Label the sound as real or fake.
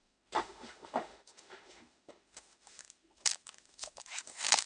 fake